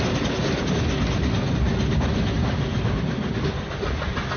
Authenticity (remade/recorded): recorded